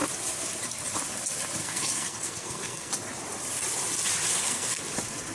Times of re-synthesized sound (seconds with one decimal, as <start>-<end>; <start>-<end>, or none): 1.6-2.9; 4.3-4.8